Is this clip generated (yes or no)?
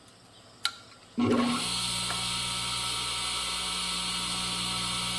no